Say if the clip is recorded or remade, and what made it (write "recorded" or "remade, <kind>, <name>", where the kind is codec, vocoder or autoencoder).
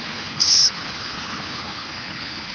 remade, codec, HILCodec